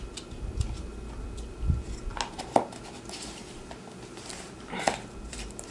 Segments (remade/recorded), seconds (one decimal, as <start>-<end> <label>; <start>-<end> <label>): 0.0-5.7 recorded